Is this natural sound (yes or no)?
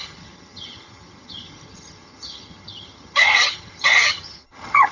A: no